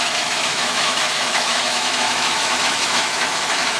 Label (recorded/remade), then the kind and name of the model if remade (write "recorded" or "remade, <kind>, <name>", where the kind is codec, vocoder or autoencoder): remade, autoencoder, DAC-VAE